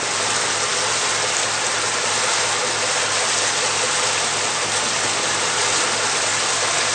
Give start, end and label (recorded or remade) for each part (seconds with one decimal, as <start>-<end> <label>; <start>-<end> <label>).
0.0-6.9 recorded